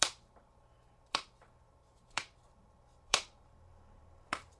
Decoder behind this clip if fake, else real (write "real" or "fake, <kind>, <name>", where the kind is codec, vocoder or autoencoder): fake, vocoder, BigVGAN v2